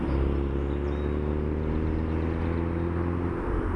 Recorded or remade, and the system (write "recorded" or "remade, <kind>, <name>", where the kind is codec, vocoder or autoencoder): recorded